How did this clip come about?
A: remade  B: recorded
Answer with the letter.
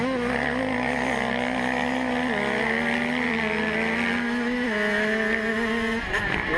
B